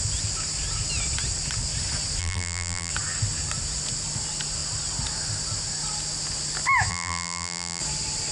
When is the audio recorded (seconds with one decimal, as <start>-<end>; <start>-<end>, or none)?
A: 0.0-2.2; 2.9-6.9; 7.8-8.3